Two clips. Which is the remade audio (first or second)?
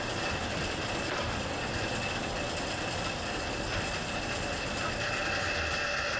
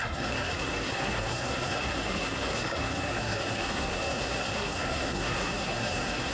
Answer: second